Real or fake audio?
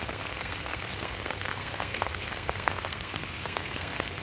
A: fake